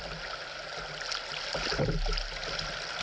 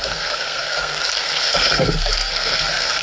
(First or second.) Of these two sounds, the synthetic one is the second